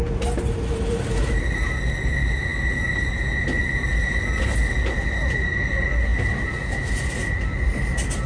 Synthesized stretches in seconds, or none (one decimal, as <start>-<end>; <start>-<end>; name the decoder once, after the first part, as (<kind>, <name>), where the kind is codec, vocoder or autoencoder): none